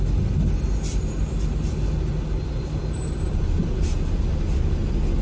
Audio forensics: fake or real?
real